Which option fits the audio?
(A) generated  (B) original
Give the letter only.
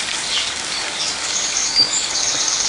A